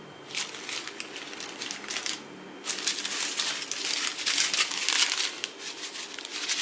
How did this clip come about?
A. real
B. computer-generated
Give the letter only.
A